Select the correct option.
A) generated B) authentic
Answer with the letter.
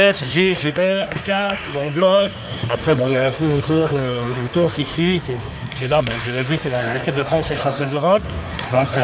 A